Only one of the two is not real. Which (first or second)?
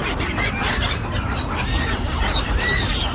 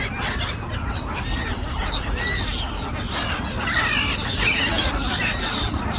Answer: first